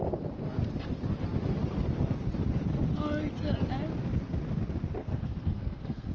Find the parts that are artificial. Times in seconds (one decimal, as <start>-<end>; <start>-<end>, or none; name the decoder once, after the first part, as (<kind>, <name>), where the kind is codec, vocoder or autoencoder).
5.0-6.1 (codec, SNAC)